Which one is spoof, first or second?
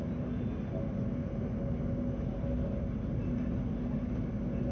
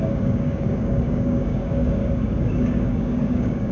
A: second